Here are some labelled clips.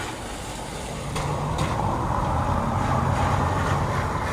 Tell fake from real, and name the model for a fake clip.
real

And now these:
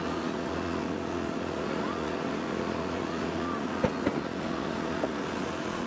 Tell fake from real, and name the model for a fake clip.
fake, vocoder, Vocos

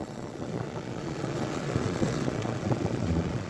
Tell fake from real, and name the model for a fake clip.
fake, vocoder, Vocos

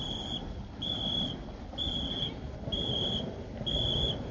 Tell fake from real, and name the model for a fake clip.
real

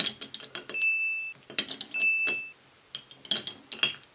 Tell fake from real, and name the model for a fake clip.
real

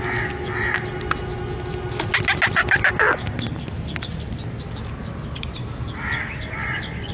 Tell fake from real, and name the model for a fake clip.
real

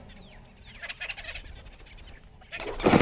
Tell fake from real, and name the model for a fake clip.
real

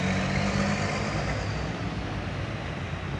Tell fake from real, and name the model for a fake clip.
real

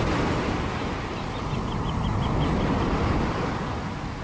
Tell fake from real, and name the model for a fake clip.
real